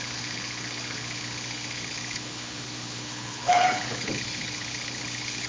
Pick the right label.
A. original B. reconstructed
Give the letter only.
B